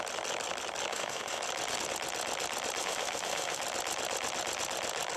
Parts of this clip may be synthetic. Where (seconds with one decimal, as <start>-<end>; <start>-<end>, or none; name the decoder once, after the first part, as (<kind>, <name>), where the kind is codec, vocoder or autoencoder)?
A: 0.9-1.4 (autoencoder, DAC-VAE); 2.8-3.6